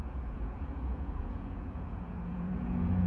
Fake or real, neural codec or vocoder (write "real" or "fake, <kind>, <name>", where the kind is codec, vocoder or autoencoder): fake, vocoder, Vocos